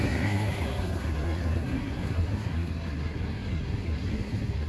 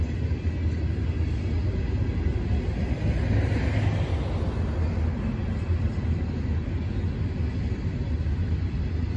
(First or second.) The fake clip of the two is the first